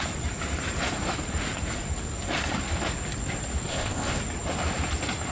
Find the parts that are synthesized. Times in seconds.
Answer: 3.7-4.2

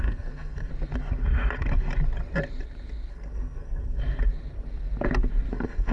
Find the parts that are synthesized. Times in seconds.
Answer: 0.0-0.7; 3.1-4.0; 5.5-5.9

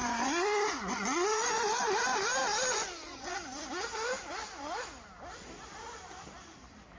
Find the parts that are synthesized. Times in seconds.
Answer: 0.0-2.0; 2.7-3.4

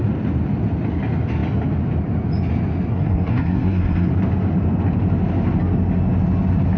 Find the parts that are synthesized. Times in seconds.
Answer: 2.9-4.1

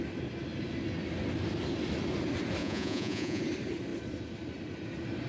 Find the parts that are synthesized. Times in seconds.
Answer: 2.6-3.4

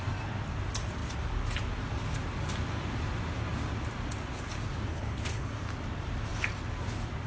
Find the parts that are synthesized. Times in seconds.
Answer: 4.9-5.5

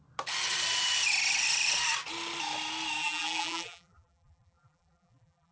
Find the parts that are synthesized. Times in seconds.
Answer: 3.0-5.5